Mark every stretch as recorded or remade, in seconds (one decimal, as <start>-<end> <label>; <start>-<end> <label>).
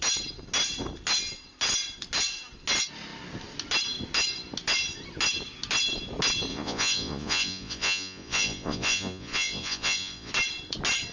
0.0-6.5 recorded; 6.5-10.3 remade; 10.3-11.1 recorded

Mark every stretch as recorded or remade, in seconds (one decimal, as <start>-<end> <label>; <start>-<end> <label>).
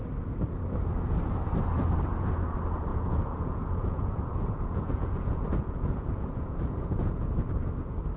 0.0-2.9 recorded; 2.9-7.7 remade; 7.7-8.2 recorded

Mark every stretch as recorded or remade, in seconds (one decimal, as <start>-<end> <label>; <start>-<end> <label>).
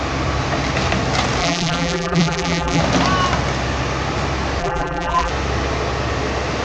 0.0-1.4 recorded; 1.4-2.8 remade; 2.8-4.6 recorded; 4.6-5.3 remade; 5.3-6.6 recorded